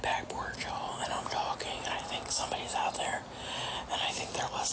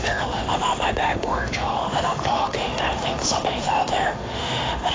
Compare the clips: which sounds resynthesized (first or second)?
second